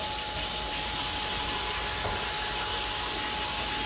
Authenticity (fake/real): real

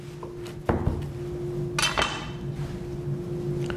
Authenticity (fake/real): real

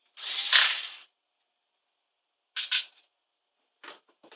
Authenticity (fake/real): real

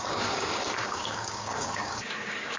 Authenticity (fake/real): fake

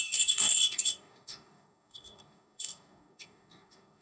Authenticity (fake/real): fake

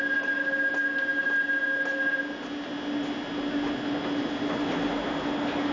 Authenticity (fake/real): real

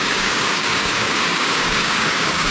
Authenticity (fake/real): fake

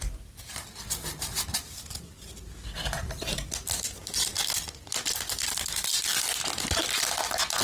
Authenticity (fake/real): real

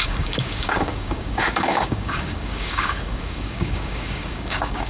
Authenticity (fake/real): fake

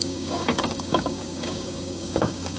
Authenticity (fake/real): fake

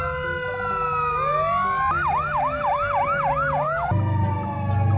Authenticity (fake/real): real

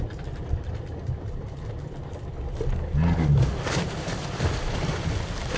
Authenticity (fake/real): real